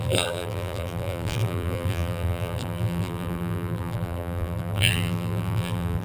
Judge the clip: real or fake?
fake